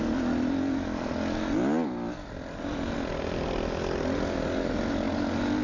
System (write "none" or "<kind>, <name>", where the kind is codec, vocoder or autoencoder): none